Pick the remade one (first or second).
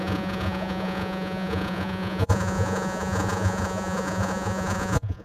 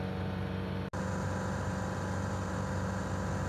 first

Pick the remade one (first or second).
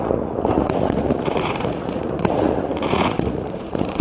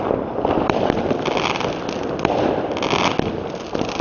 first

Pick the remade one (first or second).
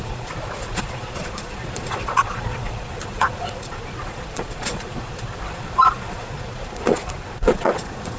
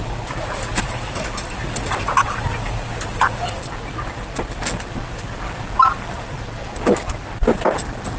first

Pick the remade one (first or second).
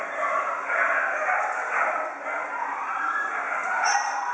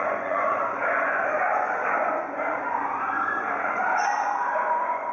second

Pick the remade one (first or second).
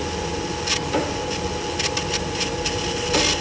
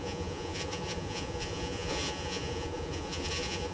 second